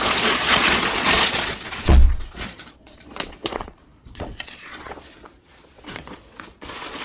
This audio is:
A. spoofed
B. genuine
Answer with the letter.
A